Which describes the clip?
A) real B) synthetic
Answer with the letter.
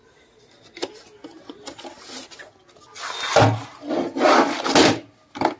A